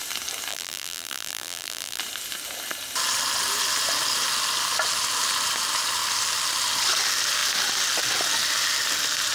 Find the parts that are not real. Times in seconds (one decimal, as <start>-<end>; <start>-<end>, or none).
0.5-2.0